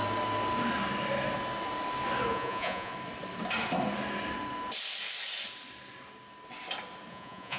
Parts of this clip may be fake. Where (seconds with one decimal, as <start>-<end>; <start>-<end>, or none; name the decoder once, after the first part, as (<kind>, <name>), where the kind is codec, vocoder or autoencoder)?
2.3-2.9 (vocoder, Vocos); 7.1-7.6